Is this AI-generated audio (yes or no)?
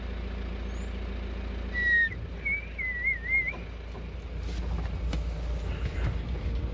no